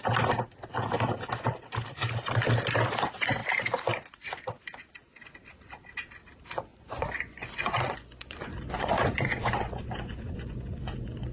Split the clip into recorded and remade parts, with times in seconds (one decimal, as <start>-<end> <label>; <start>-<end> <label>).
0.0-6.7 recorded; 6.7-11.3 remade